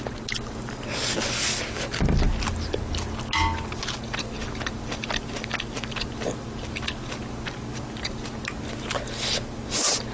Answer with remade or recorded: recorded